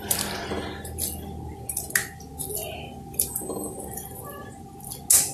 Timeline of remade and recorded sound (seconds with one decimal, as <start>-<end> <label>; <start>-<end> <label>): 0.0-5.3 recorded